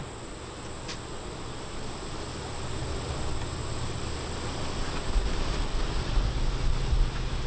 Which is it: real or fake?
real